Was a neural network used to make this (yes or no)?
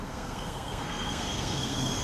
yes